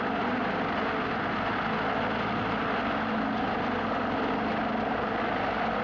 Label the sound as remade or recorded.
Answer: recorded